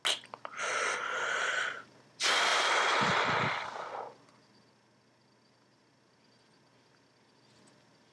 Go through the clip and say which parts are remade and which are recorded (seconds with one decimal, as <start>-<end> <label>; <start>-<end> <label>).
0.0-8.1 recorded